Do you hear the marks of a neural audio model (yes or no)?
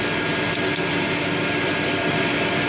no